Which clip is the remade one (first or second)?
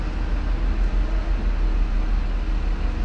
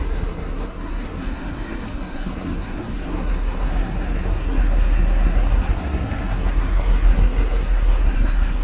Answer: second